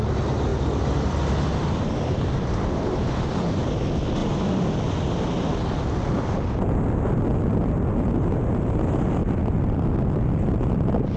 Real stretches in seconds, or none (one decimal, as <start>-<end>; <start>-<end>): 0.0-0.5; 2.6-11.2